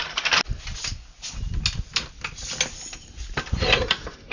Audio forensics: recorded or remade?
recorded